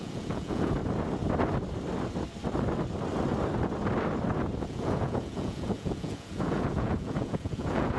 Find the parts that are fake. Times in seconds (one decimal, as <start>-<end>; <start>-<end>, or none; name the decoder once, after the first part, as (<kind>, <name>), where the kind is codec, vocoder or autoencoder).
0.0-0.8 (vocoder, Vocos); 4.6-8.0

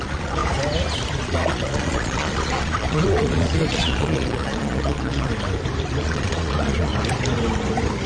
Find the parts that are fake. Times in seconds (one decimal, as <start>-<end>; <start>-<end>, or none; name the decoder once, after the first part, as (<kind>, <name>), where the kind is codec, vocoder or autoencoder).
0.0-0.4 (vocoder, Vocos); 1.2-5.3; 6.0-6.9

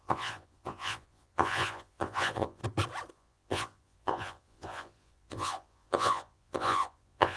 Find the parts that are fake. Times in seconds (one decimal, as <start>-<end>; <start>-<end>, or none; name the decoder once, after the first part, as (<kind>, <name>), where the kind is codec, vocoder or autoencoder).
0.0-2.6 (vocoder, Vocos); 3.1-7.4

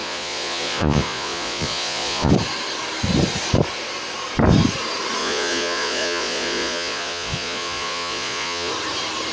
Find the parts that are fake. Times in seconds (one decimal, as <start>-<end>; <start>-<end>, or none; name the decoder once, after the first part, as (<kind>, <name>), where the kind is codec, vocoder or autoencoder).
0.0-2.3 (vocoder, Vocos); 5.2-8.7

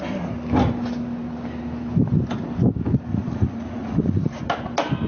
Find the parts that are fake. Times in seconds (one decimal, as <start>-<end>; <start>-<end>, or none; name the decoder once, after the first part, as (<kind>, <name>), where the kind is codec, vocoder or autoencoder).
3.1-4.4 (vocoder, Vocos)

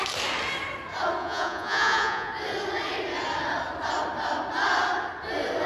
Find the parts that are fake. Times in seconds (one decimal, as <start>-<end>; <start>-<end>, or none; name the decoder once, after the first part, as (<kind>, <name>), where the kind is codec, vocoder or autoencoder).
1.2-2.3 (vocoder, Vocos)